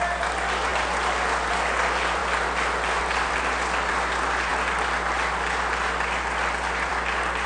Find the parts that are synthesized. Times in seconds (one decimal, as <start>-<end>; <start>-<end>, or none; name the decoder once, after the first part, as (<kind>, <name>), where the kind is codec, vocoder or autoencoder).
none